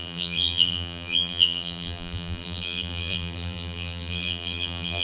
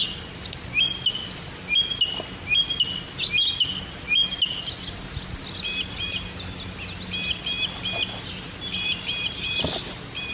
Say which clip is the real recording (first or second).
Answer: second